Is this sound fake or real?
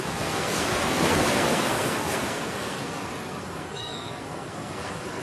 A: fake